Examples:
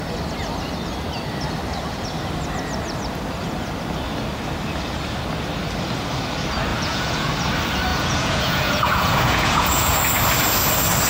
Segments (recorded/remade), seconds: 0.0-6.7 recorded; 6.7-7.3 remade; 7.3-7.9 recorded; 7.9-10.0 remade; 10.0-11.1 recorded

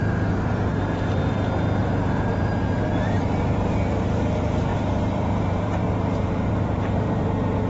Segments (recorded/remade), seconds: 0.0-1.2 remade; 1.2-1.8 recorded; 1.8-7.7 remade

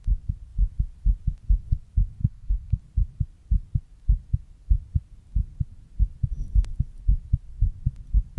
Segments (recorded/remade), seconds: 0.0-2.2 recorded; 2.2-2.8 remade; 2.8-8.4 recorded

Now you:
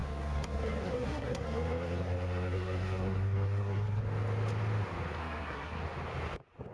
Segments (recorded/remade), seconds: 0.0-4.0 remade; 4.0-5.2 recorded; 5.2-5.8 remade; 5.8-6.7 recorded